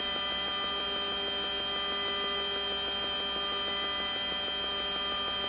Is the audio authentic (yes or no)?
yes